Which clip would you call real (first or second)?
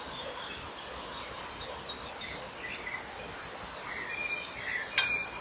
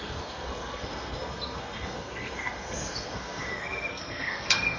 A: first